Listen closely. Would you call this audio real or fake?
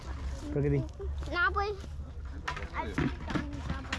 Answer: real